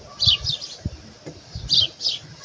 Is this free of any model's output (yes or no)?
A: yes